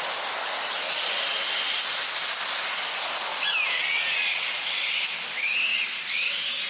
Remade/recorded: recorded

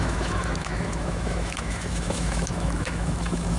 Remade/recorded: remade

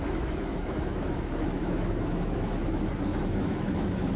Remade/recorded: remade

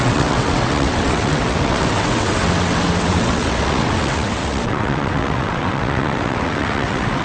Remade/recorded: remade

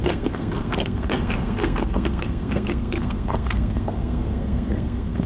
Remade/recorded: remade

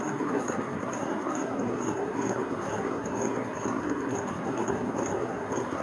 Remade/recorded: remade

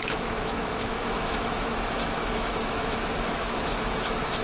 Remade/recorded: remade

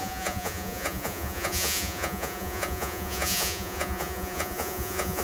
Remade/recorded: remade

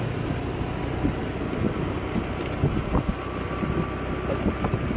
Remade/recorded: recorded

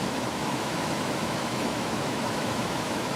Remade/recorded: remade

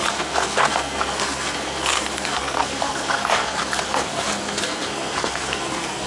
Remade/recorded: remade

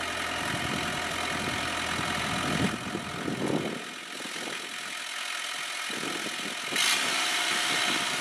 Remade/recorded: recorded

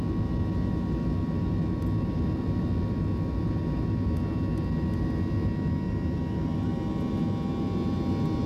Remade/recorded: recorded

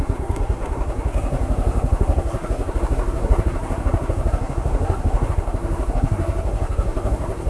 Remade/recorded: remade